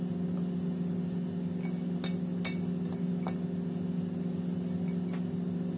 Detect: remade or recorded recorded